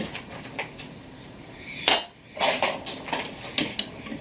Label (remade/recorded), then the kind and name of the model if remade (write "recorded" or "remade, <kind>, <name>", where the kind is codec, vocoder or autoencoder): recorded